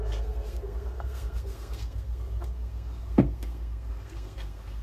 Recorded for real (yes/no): no